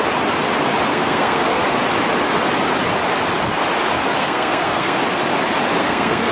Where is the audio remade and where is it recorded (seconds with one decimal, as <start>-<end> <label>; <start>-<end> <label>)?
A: 0.0-0.9 recorded; 0.9-1.6 remade; 1.6-4.2 recorded; 4.2-5.0 remade; 5.0-5.8 recorded; 5.8-6.3 remade